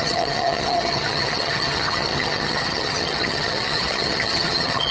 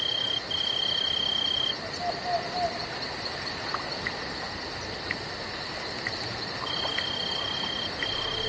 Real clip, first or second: second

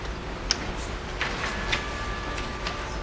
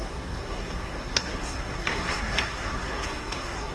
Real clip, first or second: first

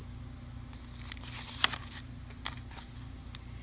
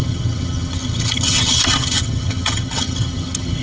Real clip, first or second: first